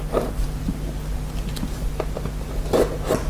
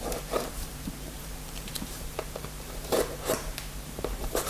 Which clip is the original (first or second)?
first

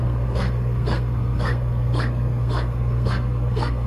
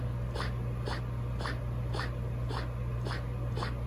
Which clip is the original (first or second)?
second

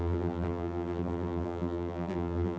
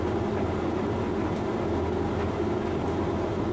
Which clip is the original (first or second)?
second